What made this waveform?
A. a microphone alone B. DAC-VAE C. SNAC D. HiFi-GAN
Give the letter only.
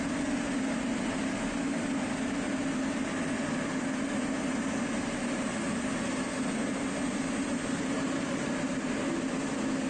A